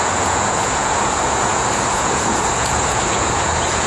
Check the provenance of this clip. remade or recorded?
remade